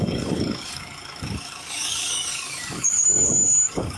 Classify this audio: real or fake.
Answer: fake